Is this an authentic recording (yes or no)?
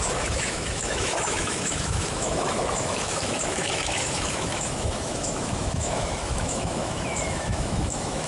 no